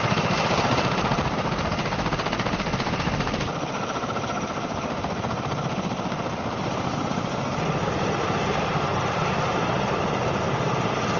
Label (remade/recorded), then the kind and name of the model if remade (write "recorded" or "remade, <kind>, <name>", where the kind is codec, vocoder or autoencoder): remade, vocoder, BigVGAN v2